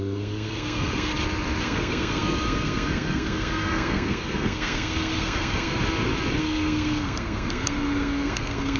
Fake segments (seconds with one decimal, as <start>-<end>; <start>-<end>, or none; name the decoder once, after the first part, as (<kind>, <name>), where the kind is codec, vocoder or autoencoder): 0.0-1.1 (codec, SNAC); 1.6-5.8; 6.4-8.8